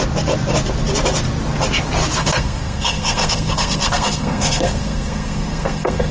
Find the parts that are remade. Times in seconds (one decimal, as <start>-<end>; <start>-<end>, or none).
2.2-6.1

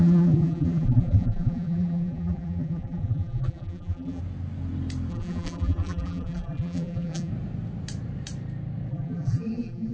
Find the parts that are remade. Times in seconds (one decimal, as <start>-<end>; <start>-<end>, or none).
0.0-4.2; 5.1-7.3; 8.9-9.9

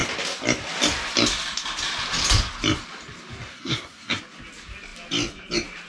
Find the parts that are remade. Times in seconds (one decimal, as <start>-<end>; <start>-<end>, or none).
3.5-4.2

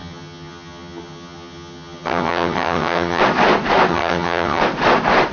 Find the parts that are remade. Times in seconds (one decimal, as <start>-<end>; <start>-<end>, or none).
0.0-3.2; 3.9-4.6